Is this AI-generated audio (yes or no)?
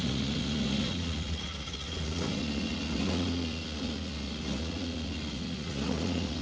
yes